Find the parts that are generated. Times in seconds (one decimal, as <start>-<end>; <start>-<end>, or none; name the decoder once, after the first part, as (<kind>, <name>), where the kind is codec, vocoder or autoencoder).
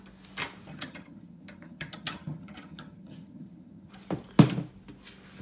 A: 0.7-3.9 (vocoder, HiFi-GAN)